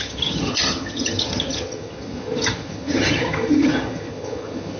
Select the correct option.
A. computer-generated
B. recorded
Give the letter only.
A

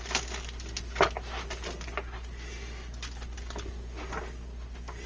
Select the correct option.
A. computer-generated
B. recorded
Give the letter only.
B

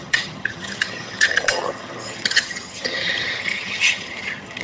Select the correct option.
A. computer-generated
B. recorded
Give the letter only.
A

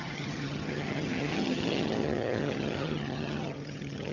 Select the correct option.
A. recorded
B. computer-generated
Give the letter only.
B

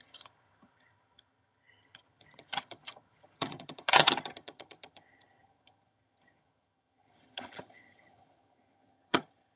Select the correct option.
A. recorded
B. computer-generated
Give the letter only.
B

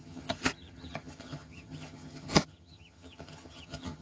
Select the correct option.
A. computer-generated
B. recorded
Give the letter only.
A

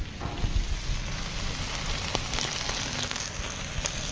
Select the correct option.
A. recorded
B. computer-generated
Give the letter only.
A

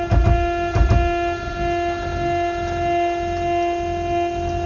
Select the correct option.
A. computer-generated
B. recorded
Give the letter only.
B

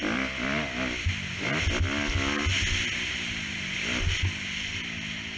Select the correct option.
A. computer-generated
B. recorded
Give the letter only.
B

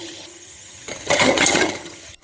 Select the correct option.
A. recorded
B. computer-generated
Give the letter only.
B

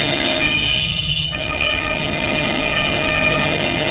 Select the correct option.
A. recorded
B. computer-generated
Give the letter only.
B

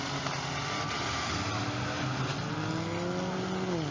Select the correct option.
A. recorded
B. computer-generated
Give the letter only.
A